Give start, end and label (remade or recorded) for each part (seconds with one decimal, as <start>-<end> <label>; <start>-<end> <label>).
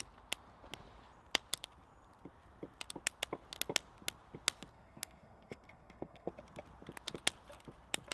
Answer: 0.0-4.7 recorded; 4.7-6.3 remade; 6.3-8.1 recorded